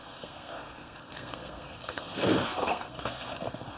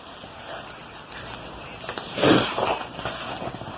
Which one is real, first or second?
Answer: second